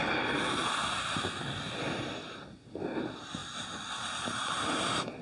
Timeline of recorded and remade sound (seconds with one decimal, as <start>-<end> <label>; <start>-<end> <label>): 0.0-5.2 recorded